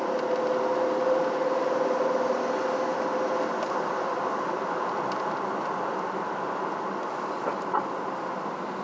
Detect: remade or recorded recorded